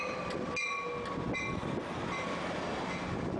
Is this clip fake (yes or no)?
no